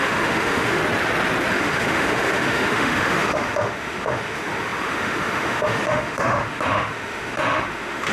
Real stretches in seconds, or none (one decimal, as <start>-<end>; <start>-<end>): 0.8-1.5